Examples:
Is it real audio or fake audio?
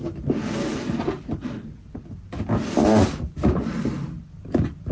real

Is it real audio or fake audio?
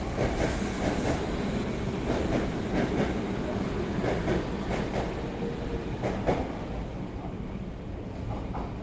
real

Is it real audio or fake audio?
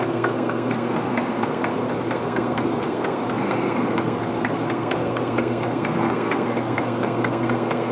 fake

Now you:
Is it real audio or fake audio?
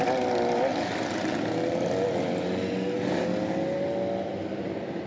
real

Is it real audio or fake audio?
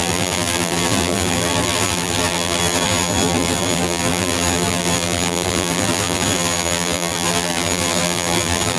fake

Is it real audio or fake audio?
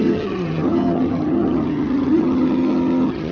fake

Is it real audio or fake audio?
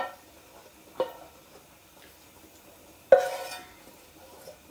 real